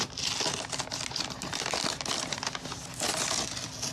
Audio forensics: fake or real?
real